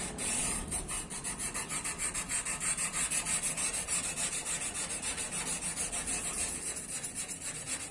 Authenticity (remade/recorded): remade